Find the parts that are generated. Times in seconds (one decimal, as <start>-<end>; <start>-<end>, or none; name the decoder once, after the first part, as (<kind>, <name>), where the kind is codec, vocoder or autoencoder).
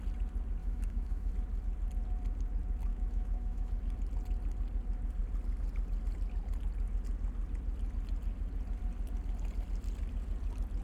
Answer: 0.6-1.3 (autoencoder, DAC-VAE); 2.9-3.7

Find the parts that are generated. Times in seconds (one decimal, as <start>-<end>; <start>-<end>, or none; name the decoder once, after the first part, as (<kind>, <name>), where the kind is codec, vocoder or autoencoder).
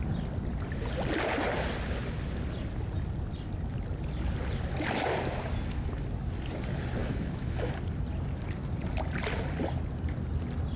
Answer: 7.0-7.7 (autoencoder, DAC-VAE)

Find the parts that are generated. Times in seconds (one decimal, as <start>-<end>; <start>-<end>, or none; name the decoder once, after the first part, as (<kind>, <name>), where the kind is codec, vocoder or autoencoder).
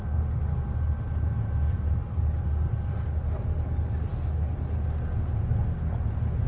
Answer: none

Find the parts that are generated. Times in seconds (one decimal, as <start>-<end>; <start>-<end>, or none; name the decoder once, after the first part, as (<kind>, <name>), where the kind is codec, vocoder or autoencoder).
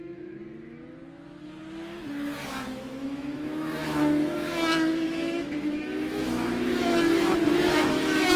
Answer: 0.0-0.4 (autoencoder, DAC-VAE); 2.5-8.4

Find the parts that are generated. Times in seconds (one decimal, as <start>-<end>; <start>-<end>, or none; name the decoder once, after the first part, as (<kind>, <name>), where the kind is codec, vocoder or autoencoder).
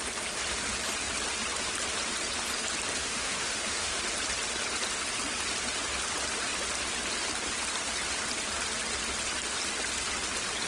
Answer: 3.0-4.0 (autoencoder, DAC-VAE)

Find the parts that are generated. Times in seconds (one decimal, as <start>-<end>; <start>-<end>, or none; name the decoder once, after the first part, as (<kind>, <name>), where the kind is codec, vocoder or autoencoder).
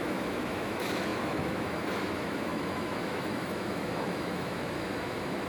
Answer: 0.0-5.5 (autoencoder, DAC-VAE)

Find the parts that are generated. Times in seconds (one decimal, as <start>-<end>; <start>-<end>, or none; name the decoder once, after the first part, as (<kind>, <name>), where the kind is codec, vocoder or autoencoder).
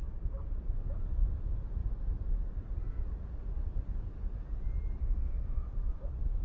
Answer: 5.0-5.6 (autoencoder, DAC-VAE)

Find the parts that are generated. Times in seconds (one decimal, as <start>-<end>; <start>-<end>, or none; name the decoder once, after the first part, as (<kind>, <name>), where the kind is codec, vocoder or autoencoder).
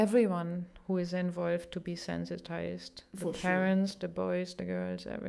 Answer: 1.4-4.6 (autoencoder, DAC-VAE)